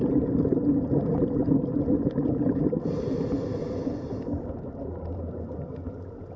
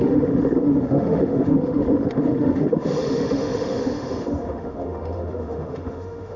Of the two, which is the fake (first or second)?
second